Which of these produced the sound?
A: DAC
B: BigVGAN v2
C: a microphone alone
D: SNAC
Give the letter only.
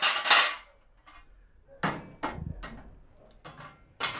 C